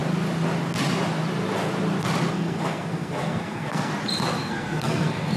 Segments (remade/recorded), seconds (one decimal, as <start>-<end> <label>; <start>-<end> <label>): 0.0-2.3 recorded; 2.3-3.9 remade; 3.9-4.4 recorded; 4.4-5.4 remade